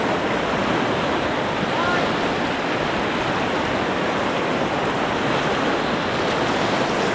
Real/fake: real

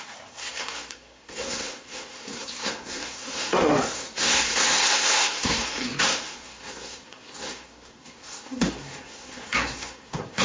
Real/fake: fake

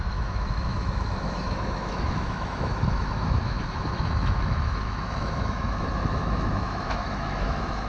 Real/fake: fake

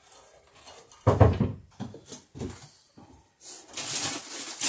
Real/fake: real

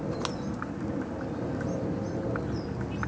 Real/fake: real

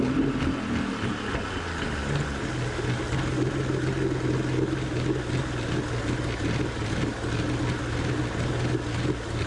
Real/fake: real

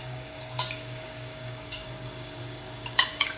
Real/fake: fake